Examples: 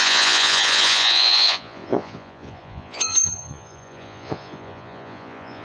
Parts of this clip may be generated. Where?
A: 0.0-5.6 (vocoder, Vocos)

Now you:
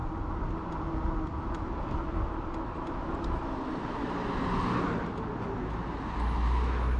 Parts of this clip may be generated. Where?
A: none